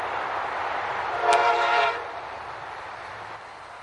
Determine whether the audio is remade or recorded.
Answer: remade